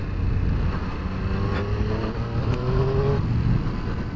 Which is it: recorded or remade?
recorded